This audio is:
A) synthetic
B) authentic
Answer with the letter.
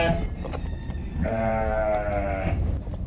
A